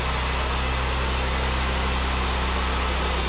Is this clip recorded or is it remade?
recorded